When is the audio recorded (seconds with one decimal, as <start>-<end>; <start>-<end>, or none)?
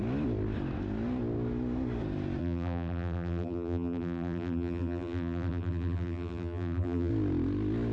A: 0.0-2.4; 7.1-7.9